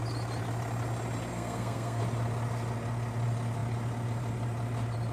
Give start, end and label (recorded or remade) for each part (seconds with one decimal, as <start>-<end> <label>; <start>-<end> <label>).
0.0-1.3 recorded; 1.3-2.0 remade; 2.0-5.1 recorded

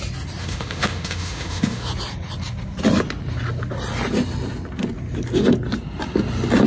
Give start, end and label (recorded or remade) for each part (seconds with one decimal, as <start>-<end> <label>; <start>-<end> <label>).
0.0-0.4 recorded; 0.4-1.9 remade; 1.9-6.7 recorded

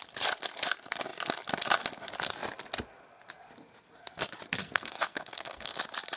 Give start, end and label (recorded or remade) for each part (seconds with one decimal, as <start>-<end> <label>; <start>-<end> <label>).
0.0-4.6 recorded; 4.6-5.8 remade; 5.8-6.2 recorded

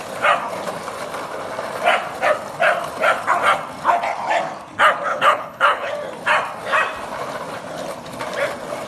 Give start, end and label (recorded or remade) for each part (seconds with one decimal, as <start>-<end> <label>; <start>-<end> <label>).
0.0-5.1 recorded; 5.1-5.9 remade; 5.9-8.9 recorded

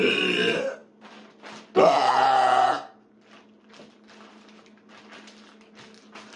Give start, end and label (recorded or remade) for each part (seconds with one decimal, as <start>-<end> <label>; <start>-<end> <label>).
0.0-6.4 recorded